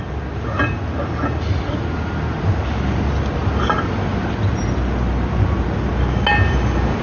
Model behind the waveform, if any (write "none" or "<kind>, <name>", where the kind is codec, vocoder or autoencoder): none